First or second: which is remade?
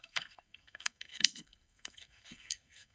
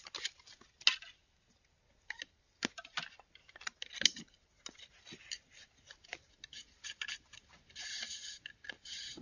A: first